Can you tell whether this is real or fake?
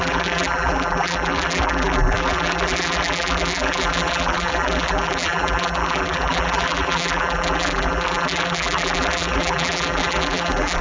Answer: fake